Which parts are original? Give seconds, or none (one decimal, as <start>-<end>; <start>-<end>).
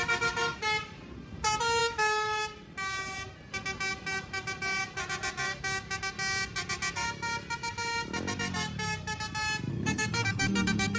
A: 0.0-9.7